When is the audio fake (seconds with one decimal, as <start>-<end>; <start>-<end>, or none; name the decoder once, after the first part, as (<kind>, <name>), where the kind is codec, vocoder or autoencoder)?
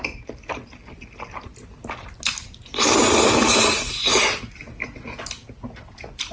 none